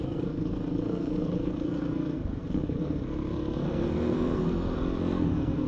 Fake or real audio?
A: fake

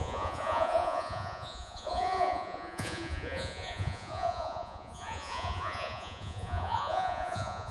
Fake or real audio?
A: fake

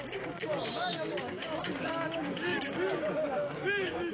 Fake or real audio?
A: fake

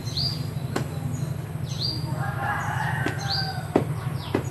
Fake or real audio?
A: real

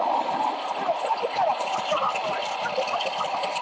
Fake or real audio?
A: real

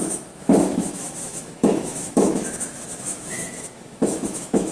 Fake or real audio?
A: fake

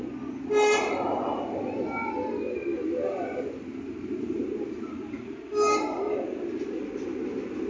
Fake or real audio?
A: real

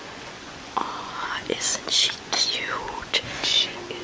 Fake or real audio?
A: fake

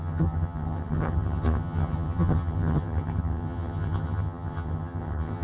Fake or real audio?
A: fake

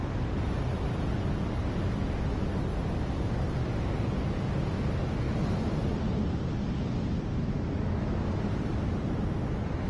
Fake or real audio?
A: real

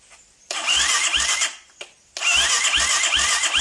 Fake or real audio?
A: real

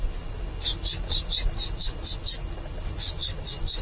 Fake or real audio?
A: real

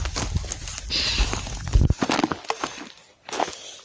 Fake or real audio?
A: real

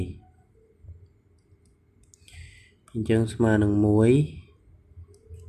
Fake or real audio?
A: real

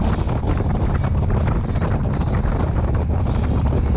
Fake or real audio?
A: real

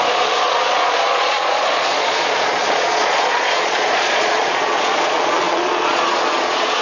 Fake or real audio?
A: fake